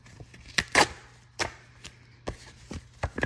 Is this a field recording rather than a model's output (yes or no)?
yes